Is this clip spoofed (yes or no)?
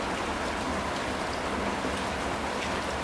no